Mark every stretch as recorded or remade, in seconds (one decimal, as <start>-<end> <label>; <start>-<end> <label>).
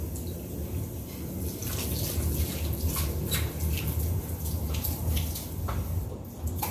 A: 0.0-6.7 recorded